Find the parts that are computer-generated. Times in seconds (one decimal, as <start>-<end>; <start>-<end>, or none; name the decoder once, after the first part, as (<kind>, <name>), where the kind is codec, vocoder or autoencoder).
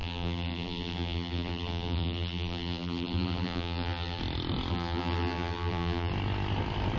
0.0-4.2 (vocoder, BigVGAN v2); 4.7-6.1